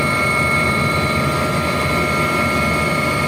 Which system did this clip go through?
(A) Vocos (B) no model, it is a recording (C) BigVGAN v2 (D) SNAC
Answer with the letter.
B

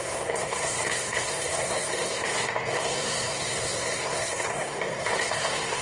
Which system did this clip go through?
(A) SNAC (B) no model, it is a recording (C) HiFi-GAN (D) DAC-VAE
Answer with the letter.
A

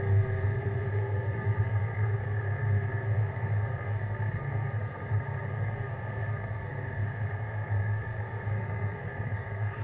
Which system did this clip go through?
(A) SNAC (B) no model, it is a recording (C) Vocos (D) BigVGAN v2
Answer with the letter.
A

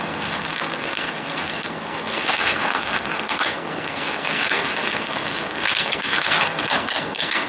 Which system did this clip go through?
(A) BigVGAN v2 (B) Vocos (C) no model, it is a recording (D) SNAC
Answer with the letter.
D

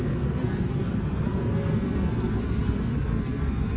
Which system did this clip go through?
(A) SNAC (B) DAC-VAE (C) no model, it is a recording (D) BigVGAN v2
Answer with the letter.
A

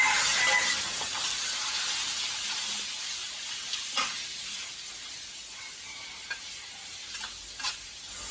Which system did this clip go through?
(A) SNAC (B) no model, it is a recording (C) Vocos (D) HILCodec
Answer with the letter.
B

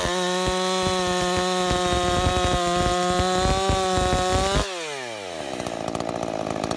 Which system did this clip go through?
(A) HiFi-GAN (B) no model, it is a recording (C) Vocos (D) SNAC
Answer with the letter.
B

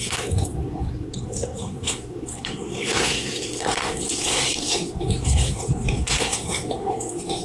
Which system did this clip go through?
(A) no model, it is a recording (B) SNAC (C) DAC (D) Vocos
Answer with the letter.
B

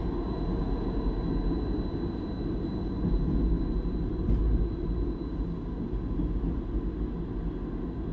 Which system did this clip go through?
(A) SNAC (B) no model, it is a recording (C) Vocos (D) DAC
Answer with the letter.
B